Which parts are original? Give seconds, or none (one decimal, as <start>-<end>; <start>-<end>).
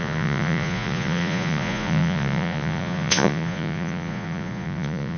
none